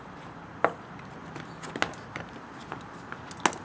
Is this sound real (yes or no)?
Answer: yes